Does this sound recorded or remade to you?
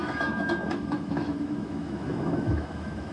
remade